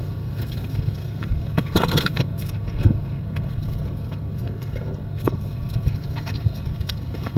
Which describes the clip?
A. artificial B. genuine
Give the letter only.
A